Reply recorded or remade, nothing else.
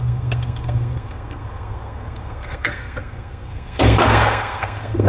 remade